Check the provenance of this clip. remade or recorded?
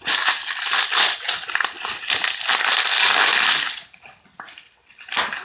recorded